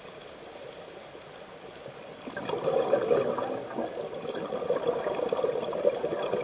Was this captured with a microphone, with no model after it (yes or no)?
yes